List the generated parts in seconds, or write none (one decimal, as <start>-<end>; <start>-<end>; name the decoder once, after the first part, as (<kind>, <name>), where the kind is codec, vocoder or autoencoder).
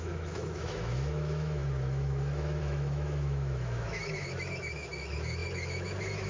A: 0.0-6.3 (autoencoder, DAC-VAE)